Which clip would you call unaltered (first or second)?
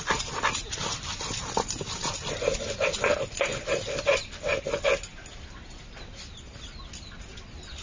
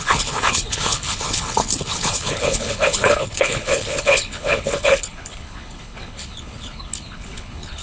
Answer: first